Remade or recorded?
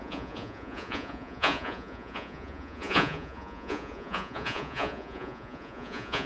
remade